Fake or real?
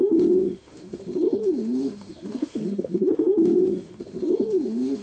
fake